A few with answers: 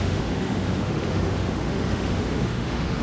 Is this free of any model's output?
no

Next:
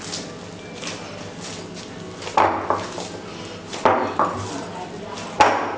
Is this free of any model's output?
yes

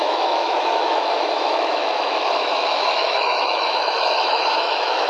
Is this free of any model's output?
no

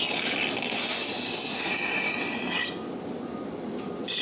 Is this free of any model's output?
yes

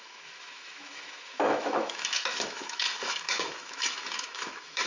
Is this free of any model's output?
no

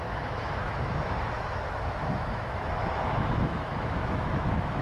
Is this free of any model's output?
no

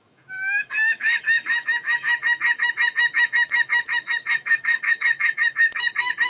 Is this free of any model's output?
no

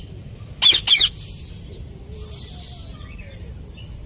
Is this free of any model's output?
yes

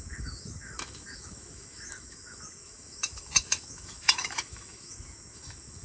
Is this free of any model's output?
no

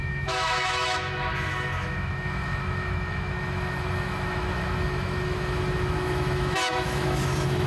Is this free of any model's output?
no